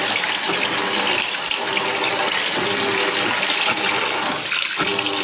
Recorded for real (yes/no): yes